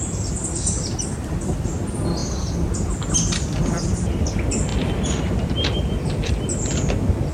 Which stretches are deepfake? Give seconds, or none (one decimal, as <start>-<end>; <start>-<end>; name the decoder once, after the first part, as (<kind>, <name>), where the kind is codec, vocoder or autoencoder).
none